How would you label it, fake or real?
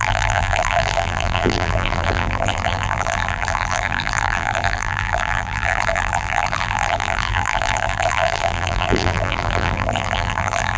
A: fake